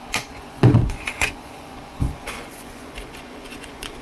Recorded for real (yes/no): no